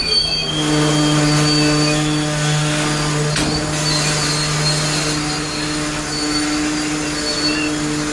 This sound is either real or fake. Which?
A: real